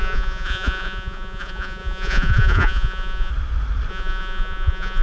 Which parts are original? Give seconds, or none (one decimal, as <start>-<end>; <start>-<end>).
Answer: 3.3-3.9